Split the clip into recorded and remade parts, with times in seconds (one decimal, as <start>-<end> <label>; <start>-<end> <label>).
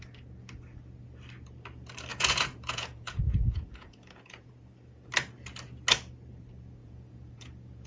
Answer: 0.0-2.1 recorded; 2.1-4.5 remade; 4.5-6.8 recorded; 6.8-7.9 remade